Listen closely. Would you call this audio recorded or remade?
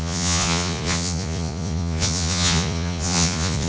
remade